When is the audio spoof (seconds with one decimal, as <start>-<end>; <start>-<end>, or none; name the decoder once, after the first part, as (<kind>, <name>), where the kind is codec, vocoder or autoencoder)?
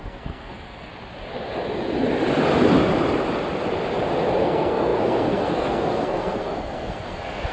0.0-0.9 (codec, SNAC); 4.4-7.5